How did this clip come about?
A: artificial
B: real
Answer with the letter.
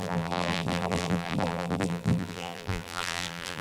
A